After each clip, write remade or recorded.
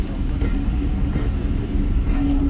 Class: recorded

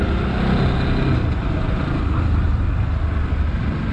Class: recorded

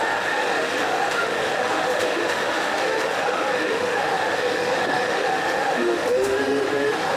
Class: remade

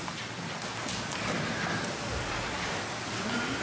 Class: recorded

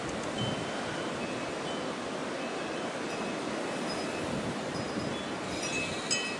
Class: recorded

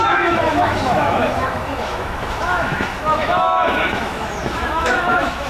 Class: remade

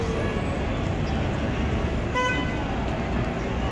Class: recorded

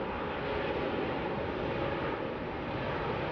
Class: recorded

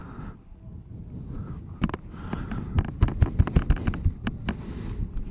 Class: recorded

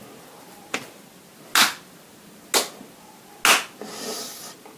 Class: recorded